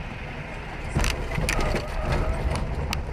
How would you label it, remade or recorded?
recorded